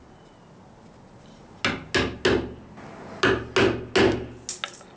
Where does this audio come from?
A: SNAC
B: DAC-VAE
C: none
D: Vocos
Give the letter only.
C